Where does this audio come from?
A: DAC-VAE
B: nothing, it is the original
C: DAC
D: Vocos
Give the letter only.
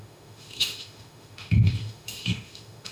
A